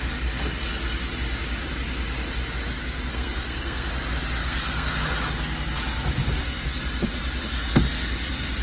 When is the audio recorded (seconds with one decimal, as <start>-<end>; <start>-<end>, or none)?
0.0-3.1; 3.9-4.4; 5.0-8.6